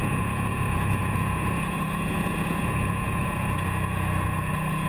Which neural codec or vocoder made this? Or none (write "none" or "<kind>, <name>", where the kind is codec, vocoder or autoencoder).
vocoder, Vocos